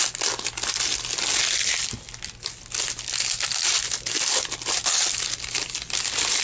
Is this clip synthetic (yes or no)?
no